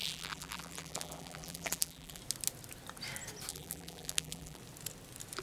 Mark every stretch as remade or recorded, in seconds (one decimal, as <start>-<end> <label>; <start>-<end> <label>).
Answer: 0.0-2.2 remade; 2.2-3.5 recorded; 3.5-4.6 remade; 4.6-5.4 recorded